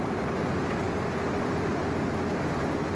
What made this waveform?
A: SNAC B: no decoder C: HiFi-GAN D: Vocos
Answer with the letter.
B